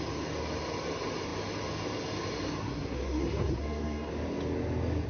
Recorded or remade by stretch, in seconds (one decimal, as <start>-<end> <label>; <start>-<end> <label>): 0.0-2.6 recorded; 2.6-4.1 remade; 4.1-5.1 recorded

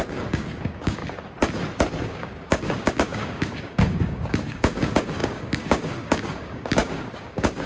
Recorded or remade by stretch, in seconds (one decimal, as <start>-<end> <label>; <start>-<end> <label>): 0.0-1.0 remade; 1.0-2.0 recorded; 2.0-7.7 remade